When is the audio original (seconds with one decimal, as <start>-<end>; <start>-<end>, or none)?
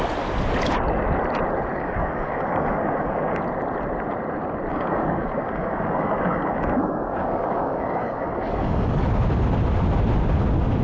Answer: 0.0-1.7; 3.4-4.7; 9.1-10.8